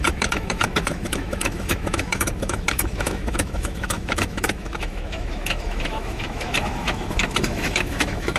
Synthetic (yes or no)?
yes